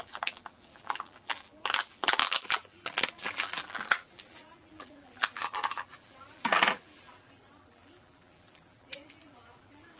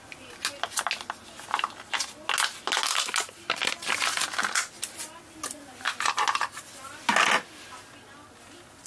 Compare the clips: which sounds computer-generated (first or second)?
first